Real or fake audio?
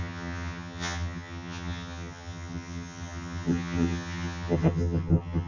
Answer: fake